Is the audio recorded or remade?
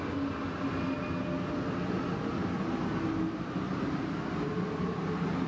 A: recorded